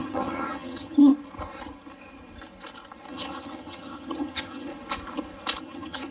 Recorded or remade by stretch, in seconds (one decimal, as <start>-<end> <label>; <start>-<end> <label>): 0.0-1.1 remade; 1.1-3.1 recorded; 3.1-4.7 remade; 4.7-5.6 recorded; 5.6-6.1 remade